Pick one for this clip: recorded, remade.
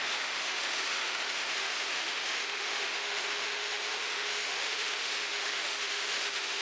remade